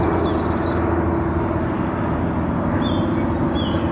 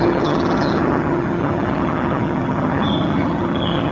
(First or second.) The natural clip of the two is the first